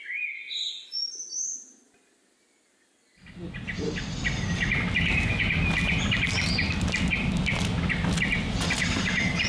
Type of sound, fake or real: real